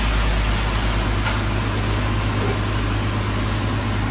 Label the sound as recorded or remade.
recorded